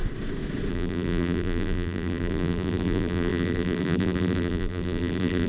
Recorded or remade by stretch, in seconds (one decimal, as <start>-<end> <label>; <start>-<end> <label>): 0.0-0.7 recorded; 0.7-5.5 remade